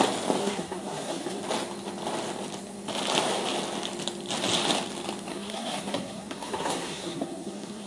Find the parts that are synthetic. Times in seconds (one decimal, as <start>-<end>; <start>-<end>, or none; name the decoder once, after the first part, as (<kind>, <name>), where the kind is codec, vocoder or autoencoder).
0.4-1.4 (codec, SNAC); 5.3-7.9